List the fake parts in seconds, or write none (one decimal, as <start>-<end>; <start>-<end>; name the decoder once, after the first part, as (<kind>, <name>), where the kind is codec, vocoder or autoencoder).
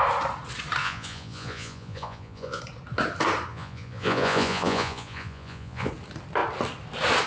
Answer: 0.8-2.6 (vocoder, Vocos); 3.5-5.9